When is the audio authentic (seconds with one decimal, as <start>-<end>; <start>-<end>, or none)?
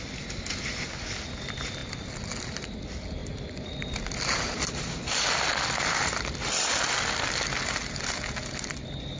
0.0-9.2